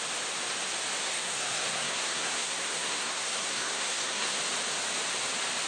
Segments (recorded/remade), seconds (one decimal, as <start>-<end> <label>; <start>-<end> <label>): 0.0-1.0 recorded; 1.0-4.4 remade; 4.4-5.7 recorded